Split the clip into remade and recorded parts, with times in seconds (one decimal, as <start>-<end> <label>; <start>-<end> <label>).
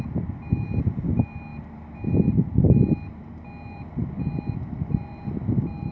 0.0-5.9 recorded